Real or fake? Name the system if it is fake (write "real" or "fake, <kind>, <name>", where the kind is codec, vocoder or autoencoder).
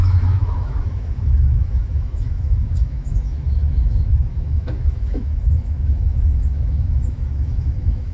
fake, autoencoder, DAC-VAE